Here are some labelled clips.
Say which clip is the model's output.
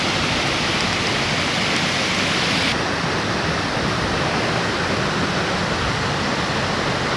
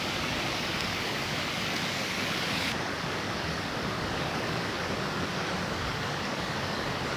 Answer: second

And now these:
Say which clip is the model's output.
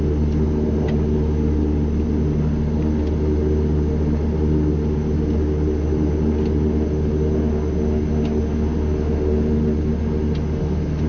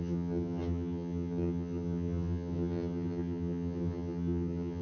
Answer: second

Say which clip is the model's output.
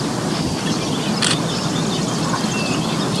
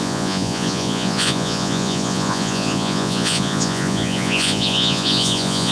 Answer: second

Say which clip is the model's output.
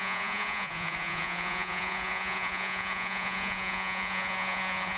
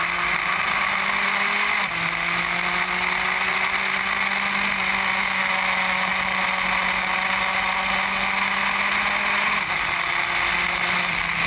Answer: first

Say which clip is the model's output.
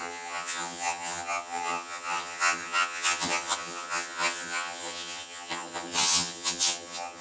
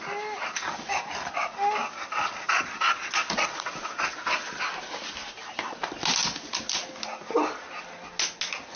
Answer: first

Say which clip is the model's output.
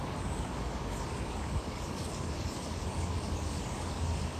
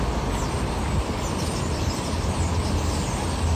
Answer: first